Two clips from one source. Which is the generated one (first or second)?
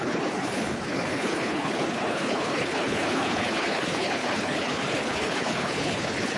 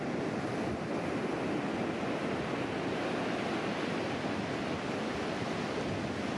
first